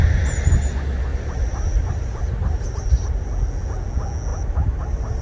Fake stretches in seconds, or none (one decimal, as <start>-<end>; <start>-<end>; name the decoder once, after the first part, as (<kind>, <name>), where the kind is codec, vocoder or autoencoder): 1.1-3.1 (vocoder, BigVGAN v2); 4.3-5.2